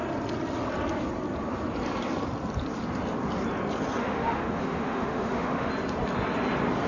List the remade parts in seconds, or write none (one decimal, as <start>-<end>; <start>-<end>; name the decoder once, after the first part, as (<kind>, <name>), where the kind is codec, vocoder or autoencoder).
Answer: 4.0-5.7 (autoencoder, DAC-VAE)